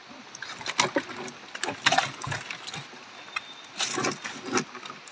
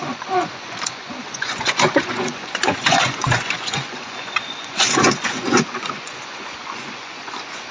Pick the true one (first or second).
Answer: first